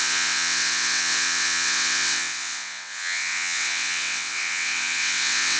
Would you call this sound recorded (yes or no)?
no